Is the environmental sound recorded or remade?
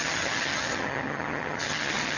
remade